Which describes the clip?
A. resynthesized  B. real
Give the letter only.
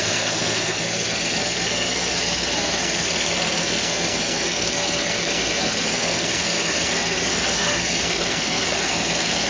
A